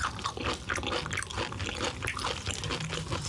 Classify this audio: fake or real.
real